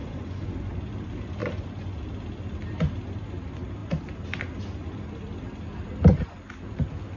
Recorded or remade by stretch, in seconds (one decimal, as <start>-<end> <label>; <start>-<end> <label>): 0.0-0.7 remade; 0.7-1.4 recorded; 1.4-2.0 remade; 2.0-7.2 recorded